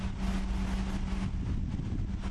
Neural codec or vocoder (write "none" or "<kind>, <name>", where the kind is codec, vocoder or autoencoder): none